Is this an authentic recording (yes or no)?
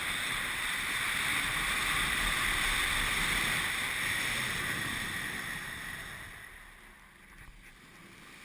yes